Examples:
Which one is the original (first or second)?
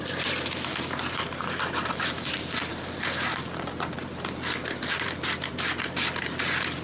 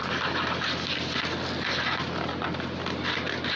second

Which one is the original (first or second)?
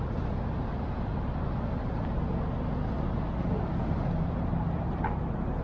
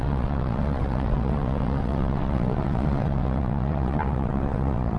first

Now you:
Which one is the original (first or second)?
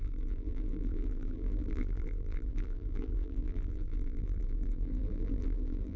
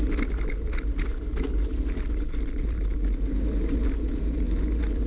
second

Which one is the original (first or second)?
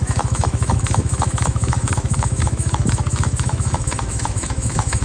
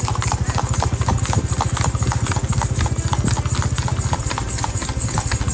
second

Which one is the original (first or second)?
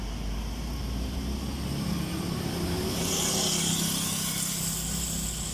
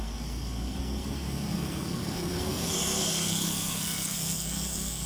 first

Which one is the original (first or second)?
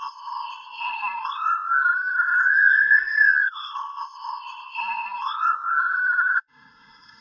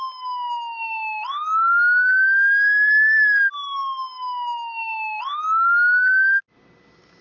second